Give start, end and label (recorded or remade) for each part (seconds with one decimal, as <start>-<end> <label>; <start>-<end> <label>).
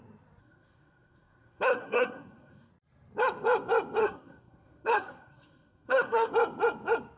0.0-0.4 recorded; 0.4-2.7 remade; 2.7-4.0 recorded; 4.0-6.3 remade; 6.3-7.2 recorded